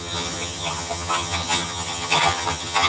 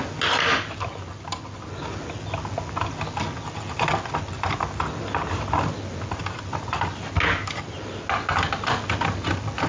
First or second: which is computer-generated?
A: first